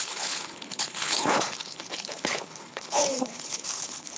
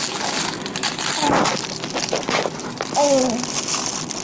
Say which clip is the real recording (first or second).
second